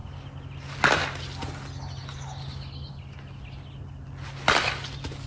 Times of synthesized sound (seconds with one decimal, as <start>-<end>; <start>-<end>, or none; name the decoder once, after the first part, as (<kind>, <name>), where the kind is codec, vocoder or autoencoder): none